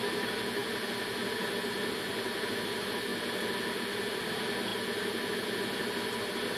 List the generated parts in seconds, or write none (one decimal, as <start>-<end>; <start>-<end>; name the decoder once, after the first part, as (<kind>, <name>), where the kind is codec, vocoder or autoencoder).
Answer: none